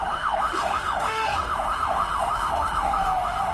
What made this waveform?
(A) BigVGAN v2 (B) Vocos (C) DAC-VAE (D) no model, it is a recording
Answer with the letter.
C